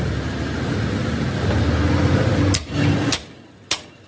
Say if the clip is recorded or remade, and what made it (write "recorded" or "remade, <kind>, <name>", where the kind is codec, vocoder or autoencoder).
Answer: recorded